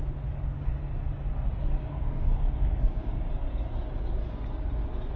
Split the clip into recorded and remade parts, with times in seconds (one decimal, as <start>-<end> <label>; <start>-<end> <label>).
0.0-1.6 recorded; 1.6-3.2 remade; 3.2-5.2 recorded